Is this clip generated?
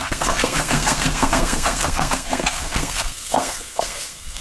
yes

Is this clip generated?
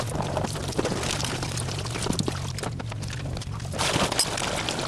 no